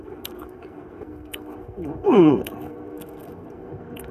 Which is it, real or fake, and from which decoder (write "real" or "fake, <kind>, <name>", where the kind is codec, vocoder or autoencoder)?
fake, codec, SNAC